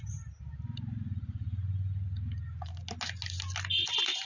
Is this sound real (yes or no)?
yes